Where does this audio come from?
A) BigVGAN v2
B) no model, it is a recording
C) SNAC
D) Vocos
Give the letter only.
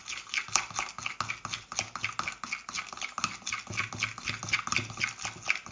B